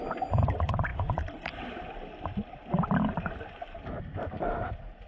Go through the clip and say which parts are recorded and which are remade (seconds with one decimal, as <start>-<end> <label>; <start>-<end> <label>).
0.0-5.1 recorded